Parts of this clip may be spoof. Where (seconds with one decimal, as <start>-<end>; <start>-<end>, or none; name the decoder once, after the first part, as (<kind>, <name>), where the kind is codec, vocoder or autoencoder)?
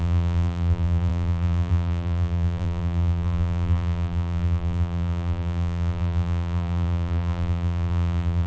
0.0-8.5 (vocoder, BigVGAN v2)